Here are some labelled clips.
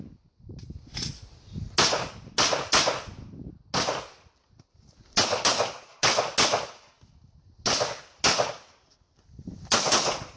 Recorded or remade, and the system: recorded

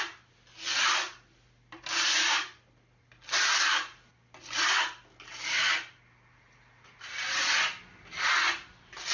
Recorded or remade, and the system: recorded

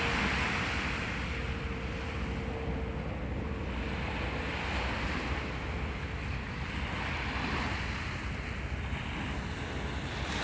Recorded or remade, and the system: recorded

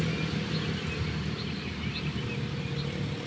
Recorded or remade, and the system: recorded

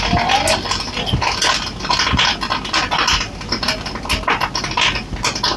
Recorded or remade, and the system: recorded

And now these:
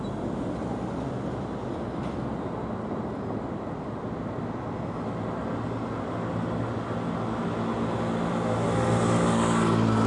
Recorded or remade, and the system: recorded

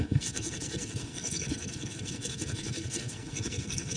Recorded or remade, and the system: remade, codec, SNAC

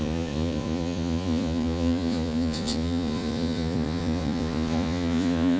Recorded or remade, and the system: remade, vocoder, Vocos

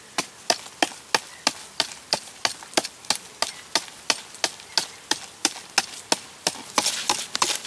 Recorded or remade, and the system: recorded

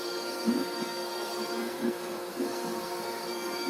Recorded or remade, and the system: remade, codec, SNAC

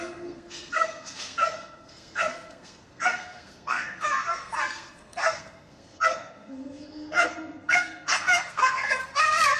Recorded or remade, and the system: remade, codec, SNAC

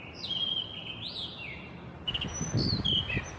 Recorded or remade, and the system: recorded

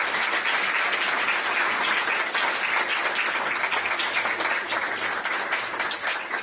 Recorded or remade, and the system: recorded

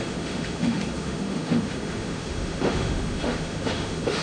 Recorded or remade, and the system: remade, autoencoder, DAC-VAE